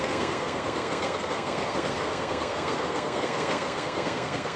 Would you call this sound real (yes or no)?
no